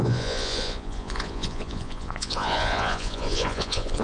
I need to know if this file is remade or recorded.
remade